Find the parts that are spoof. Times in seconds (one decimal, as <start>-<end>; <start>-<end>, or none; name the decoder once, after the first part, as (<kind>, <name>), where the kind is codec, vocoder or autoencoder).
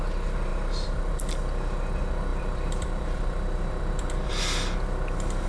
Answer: 0.5-1.1 (vocoder, BigVGAN v2); 2.3-4.3